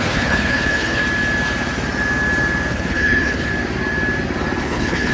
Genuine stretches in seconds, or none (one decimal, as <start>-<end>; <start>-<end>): 1.0-2.7; 3.5-4.6